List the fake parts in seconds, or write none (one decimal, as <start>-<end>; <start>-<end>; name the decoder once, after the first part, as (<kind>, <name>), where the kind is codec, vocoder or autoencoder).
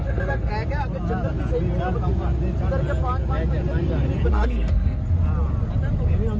0.0-0.5 (codec, SNAC); 4.3-5.0